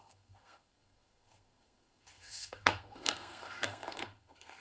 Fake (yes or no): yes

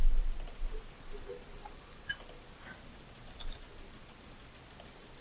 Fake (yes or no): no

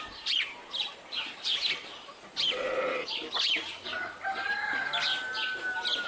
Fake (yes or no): no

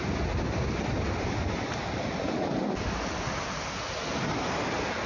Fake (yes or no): no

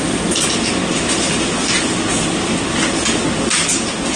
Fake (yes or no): no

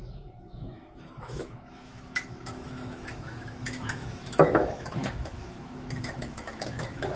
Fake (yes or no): yes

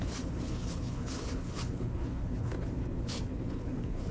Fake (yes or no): yes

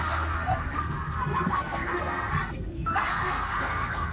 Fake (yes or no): yes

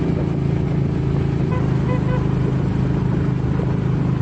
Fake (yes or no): no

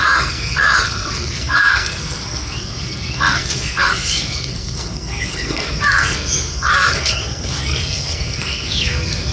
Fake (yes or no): yes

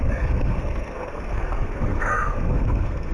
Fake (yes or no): yes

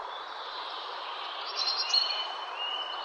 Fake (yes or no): yes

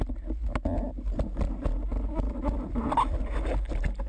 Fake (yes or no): no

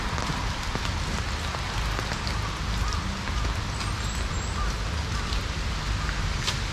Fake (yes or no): no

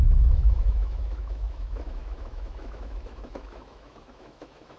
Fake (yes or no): yes